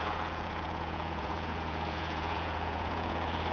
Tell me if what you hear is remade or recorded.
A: remade